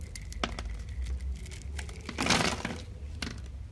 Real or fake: real